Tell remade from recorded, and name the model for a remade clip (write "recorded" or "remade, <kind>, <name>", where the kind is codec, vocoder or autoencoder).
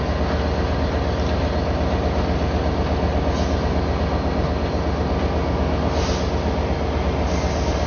recorded